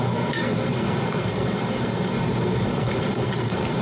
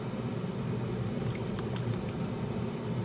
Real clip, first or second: second